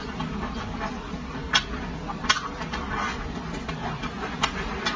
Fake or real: real